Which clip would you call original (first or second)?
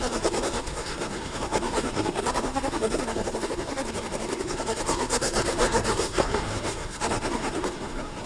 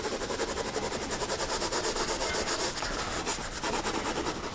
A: second